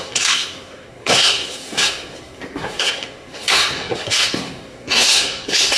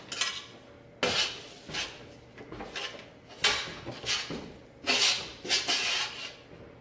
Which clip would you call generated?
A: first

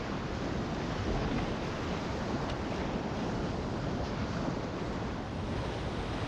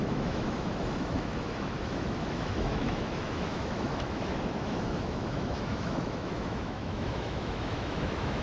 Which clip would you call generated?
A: second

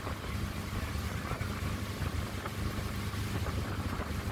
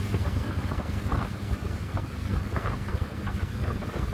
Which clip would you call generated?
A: second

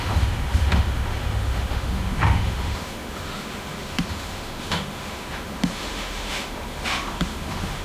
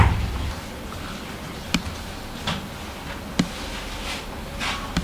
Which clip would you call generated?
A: first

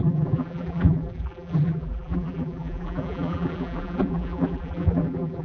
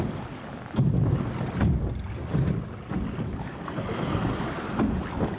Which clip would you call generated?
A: first